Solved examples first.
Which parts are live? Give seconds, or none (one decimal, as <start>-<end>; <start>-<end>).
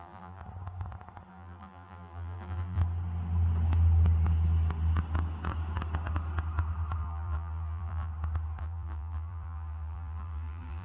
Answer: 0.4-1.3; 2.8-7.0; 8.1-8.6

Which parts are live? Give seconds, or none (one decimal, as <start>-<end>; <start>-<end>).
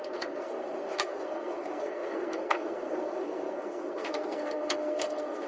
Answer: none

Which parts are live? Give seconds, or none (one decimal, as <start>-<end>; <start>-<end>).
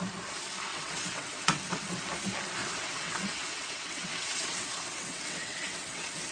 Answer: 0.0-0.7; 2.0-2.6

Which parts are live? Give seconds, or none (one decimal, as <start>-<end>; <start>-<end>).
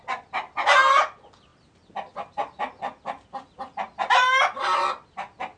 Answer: 0.0-5.6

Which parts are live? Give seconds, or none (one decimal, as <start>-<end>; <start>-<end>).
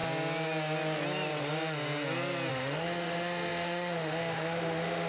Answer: 0.0-2.5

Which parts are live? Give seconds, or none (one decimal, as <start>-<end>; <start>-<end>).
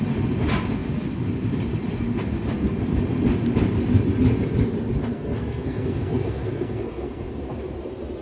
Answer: 0.0-5.1; 7.4-8.2